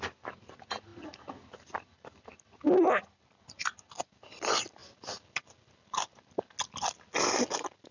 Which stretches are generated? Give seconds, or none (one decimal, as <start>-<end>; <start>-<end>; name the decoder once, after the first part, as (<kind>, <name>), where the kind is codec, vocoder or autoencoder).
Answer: none